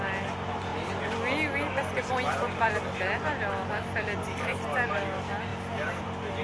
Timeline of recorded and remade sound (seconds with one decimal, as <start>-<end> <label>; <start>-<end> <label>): 0.0-6.4 recorded